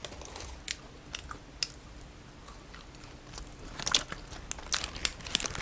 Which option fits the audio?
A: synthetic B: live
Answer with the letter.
B